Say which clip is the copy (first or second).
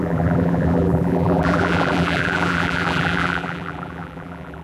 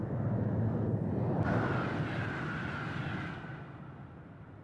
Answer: first